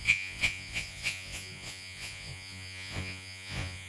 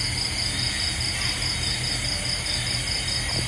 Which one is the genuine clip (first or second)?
second